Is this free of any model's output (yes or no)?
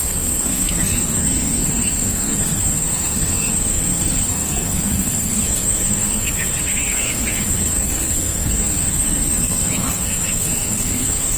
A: no